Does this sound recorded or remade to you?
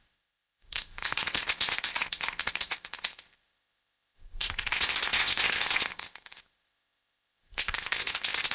remade